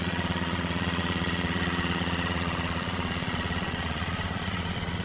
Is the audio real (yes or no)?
no